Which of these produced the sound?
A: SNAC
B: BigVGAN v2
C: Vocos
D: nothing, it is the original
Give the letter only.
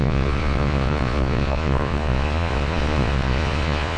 C